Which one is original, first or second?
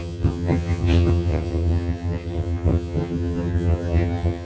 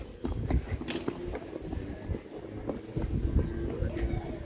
second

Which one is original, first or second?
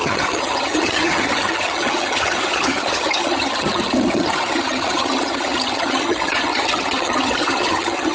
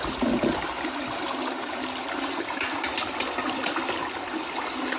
second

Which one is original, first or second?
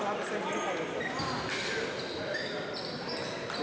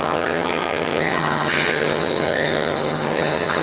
first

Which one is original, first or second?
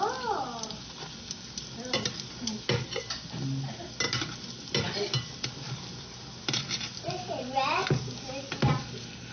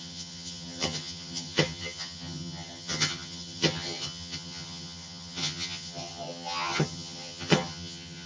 first